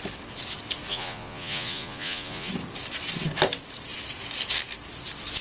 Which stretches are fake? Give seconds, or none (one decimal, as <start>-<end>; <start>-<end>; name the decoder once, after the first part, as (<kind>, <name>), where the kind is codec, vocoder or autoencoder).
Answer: 0.9-2.5 (vocoder, Vocos)